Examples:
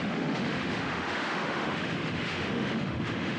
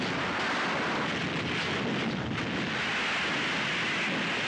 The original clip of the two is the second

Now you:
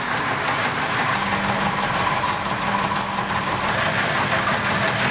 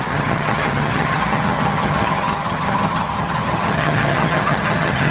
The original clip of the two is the first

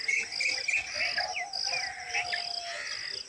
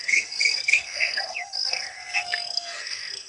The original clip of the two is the first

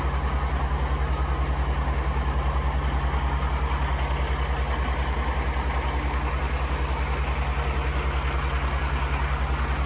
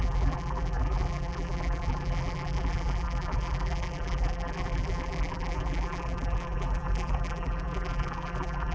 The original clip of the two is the first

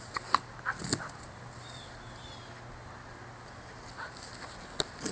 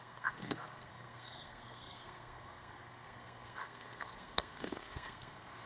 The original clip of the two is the first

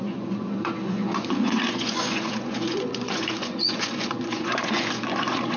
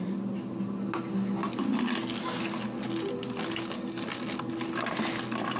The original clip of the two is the second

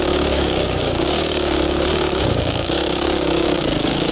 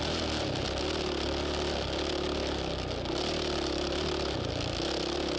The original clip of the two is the second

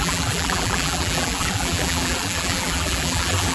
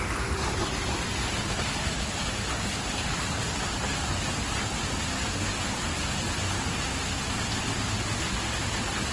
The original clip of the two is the second